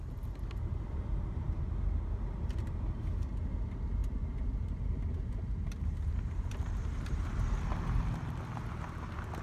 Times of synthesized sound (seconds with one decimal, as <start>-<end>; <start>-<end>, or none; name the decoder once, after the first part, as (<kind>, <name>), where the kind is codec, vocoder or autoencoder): 4.0-7.5 (vocoder, BigVGAN v2)

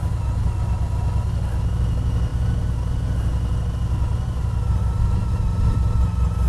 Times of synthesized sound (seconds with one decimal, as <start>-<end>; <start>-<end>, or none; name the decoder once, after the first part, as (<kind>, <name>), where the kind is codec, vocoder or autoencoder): none

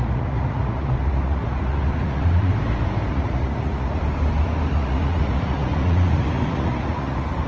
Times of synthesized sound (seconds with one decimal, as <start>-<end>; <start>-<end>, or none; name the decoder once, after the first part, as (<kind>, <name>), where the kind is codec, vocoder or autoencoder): 0.0-2.5 (vocoder, Vocos); 3.1-4.0; 4.7-7.5

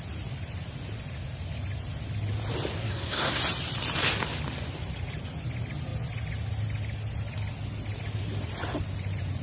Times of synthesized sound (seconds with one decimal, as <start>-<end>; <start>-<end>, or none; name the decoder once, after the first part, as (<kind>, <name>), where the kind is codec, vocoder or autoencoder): 2.8-3.4 (codec, SNAC)